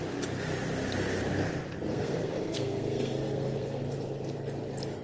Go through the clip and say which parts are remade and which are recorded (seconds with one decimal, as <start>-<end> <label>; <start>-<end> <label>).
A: 0.0-1.9 recorded; 1.9-3.8 remade; 3.8-5.0 recorded